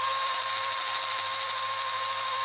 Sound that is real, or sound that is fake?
real